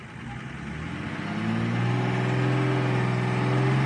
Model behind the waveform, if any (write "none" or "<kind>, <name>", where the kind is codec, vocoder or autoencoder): none